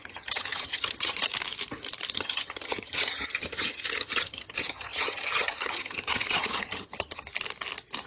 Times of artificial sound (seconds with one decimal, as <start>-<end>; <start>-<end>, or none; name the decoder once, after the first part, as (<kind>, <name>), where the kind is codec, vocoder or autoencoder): 0.0-1.3 (vocoder, HiFi-GAN); 2.1-7.3